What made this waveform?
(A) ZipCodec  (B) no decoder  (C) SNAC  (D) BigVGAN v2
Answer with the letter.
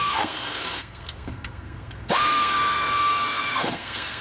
C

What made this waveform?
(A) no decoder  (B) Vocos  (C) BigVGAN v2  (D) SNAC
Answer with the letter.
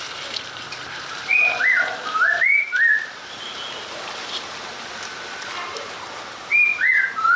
C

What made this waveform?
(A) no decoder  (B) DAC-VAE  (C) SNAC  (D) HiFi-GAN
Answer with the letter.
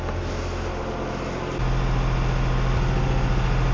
A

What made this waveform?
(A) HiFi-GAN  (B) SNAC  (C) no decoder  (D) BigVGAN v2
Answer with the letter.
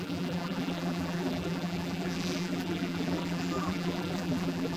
D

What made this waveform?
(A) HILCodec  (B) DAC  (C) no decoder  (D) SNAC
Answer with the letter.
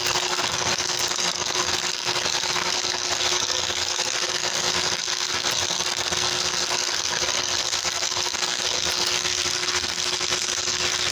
D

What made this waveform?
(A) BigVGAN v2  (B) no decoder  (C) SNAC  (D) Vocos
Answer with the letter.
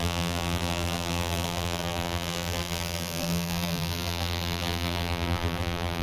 A